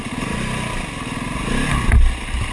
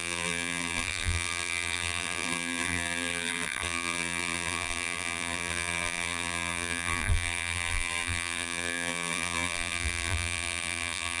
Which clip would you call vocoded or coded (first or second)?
second